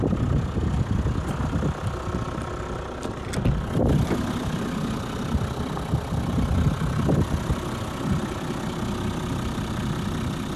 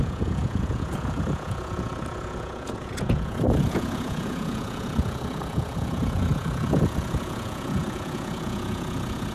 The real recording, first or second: first